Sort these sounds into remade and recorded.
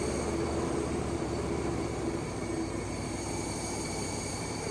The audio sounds remade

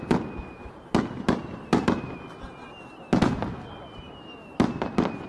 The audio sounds recorded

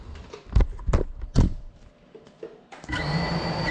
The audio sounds remade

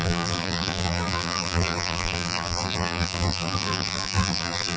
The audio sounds remade